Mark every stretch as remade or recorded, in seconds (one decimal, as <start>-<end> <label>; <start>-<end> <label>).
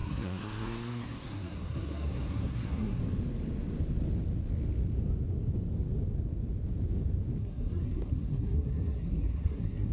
0.0-3.0 remade; 3.0-7.4 recorded; 7.4-9.9 remade